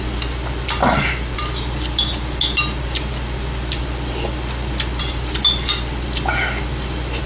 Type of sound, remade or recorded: recorded